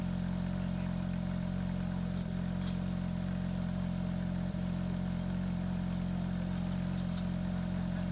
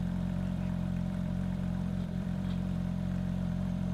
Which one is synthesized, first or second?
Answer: second